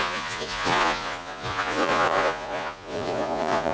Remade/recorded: remade